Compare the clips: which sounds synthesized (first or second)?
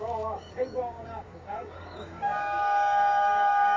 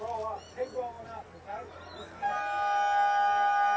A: first